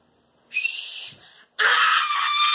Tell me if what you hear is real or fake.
real